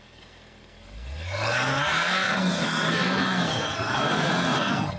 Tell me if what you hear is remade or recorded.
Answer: remade